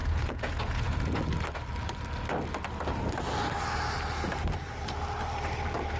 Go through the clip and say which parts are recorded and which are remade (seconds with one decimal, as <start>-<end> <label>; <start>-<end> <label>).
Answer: 0.0-1.1 remade; 1.1-6.0 recorded